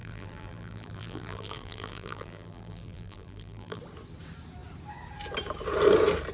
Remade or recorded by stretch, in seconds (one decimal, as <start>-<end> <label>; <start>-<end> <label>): 0.0-3.8 remade; 3.8-6.3 recorded

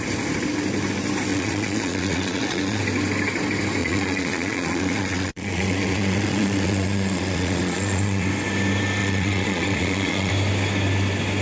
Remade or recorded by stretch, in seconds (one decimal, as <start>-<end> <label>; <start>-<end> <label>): 0.0-1.3 recorded; 1.3-2.8 remade; 2.8-3.8 recorded; 3.8-8.3 remade; 8.3-9.0 recorded; 9.0-10.3 remade; 10.3-11.4 recorded

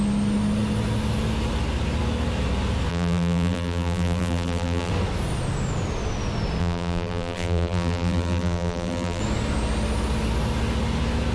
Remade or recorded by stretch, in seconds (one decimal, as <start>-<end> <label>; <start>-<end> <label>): 0.0-2.9 recorded; 2.9-4.9 remade; 4.9-6.6 recorded; 6.6-9.2 remade; 9.2-11.3 recorded